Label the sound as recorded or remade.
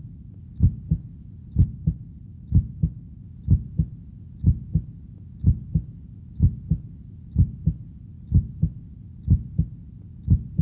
recorded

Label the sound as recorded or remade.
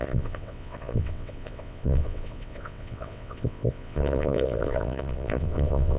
remade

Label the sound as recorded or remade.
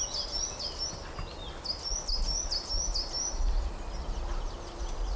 recorded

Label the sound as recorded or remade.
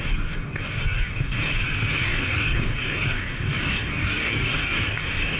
remade